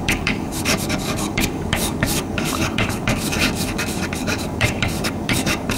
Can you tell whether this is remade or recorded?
remade